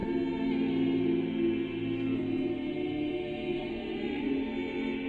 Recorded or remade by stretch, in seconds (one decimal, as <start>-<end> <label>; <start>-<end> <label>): 0.0-3.5 recorded; 3.5-4.3 remade; 4.3-5.1 recorded

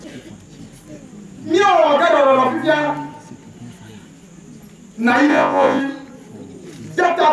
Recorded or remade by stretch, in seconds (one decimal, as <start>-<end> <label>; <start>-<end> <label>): 0.0-5.3 recorded; 5.3-5.8 remade; 5.8-7.3 recorded

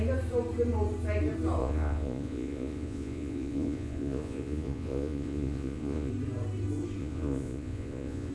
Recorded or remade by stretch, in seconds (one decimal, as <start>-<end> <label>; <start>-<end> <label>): 0.0-1.6 recorded; 1.6-6.1 remade; 6.1-7.0 recorded; 7.0-8.3 remade

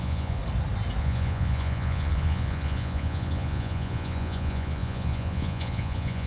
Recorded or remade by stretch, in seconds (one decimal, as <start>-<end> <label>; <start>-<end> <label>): 0.0-0.4 remade; 0.4-1.0 recorded; 1.0-6.3 remade

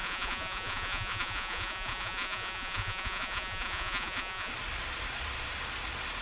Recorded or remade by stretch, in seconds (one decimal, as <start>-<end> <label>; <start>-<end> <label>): 0.0-4.5 remade; 4.5-6.2 recorded

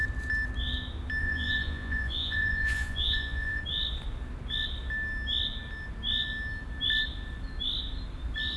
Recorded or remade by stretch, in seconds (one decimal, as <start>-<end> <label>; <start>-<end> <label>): 0.0-1.2 recorded; 1.2-3.6 remade; 3.6-8.6 recorded

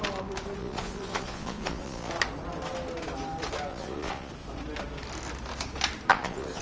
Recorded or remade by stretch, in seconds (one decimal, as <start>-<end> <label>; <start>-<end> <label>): 0.0-0.6 recorded; 0.6-2.1 remade; 2.1-3.7 recorded; 3.7-4.3 remade; 4.3-6.1 recorded; 6.1-6.6 remade

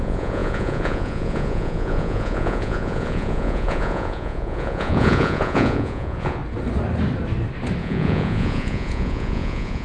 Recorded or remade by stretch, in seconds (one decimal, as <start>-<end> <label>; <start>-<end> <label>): 0.0-6.4 remade; 6.4-7.8 recorded; 7.8-9.8 remade